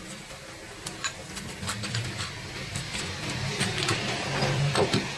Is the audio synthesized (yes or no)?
yes